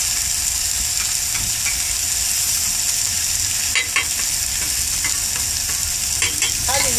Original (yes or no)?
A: yes